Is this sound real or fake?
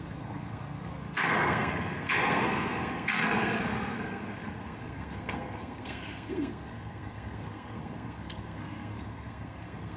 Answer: fake